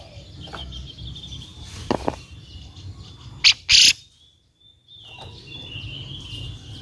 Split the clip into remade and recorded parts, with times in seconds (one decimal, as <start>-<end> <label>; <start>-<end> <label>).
0.0-6.8 recorded